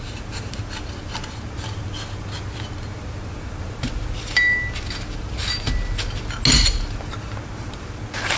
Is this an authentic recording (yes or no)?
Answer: yes